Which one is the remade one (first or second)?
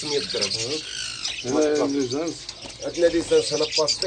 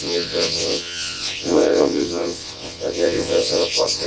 second